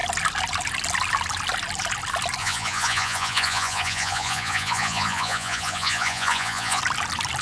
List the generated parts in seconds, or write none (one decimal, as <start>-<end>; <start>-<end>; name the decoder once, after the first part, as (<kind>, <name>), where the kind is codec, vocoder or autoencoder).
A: 2.4-6.8 (vocoder, Vocos)